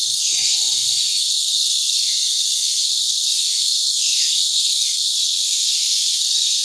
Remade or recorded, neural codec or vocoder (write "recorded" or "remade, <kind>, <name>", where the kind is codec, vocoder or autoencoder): remade, codec, SNAC